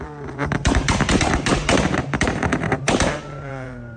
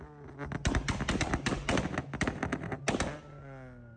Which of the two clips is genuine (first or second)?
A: second